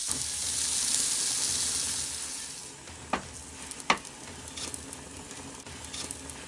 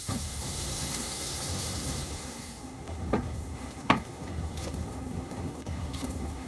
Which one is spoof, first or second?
second